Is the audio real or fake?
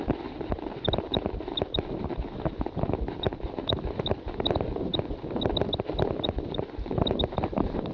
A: real